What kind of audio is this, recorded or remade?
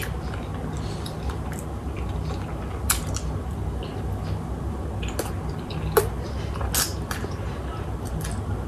recorded